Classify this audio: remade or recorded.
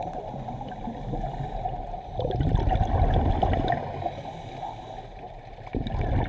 recorded